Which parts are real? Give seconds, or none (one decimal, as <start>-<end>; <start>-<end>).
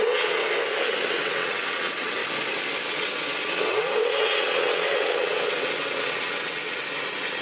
0.4-0.9; 2.2-2.8